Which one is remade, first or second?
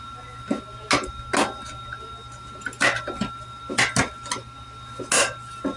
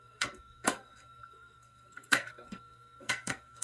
second